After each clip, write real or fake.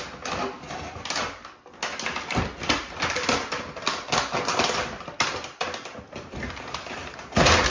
real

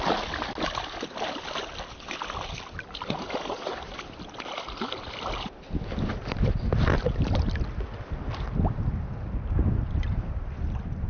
real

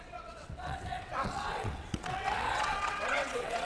fake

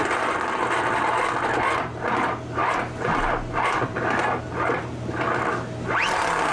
real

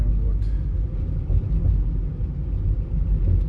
real